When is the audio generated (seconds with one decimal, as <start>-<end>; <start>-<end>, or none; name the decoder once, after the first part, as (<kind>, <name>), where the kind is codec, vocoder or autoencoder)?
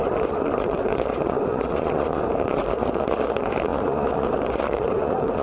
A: 0.0-5.4 (vocoder, Vocos)